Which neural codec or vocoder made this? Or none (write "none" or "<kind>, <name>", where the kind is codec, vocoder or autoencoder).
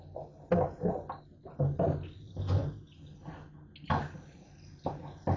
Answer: none